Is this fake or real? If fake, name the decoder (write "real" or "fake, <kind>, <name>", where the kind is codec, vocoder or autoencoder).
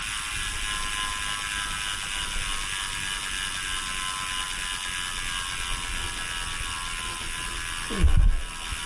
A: real